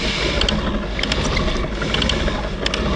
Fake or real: real